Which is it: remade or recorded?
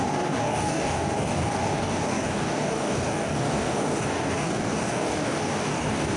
remade